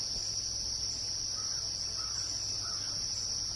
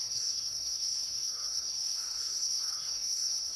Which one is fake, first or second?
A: second